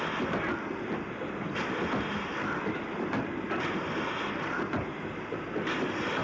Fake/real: real